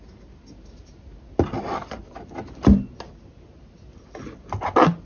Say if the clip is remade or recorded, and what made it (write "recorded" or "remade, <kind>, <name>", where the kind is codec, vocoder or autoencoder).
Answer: recorded